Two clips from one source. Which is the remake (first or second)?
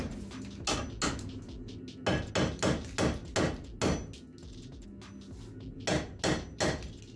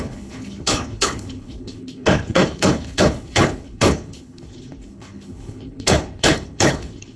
second